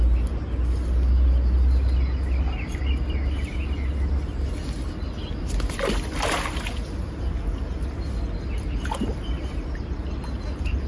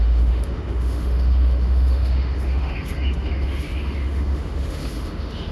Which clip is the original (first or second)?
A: first